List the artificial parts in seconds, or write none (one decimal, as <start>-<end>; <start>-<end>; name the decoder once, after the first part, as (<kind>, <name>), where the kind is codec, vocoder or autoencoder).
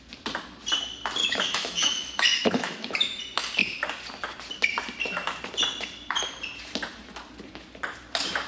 1.2-3.2 (autoencoder, DAC-VAE)